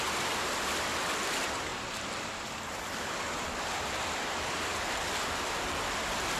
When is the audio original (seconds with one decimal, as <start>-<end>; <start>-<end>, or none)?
0.0-6.4